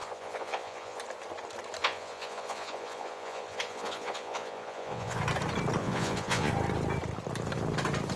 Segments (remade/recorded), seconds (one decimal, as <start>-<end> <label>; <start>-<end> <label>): 0.0-1.0 remade; 1.0-1.8 recorded; 1.8-5.2 remade; 5.2-5.8 recorded; 5.8-6.5 remade; 6.5-8.2 recorded